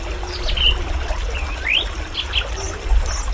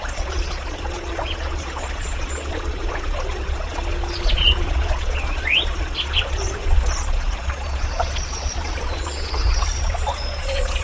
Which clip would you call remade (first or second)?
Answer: second